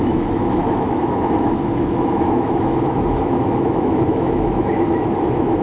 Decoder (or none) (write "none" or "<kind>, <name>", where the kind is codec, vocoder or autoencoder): autoencoder, DAC-VAE